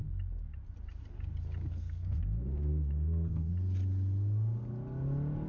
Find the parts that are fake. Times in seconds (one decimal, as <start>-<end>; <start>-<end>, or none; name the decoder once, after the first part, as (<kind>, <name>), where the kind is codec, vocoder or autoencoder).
1.7-3.5 (codec, SNAC)